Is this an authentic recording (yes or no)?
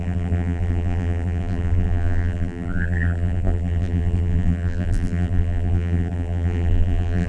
no